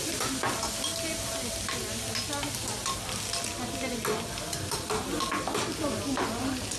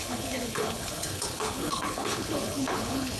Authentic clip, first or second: first